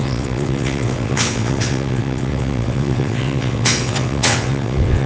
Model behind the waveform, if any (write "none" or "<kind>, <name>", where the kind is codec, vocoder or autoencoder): vocoder, WaveNeXt